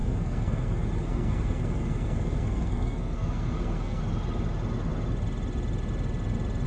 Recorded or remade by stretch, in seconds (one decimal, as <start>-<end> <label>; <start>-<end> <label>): 0.0-4.0 remade; 4.0-6.7 recorded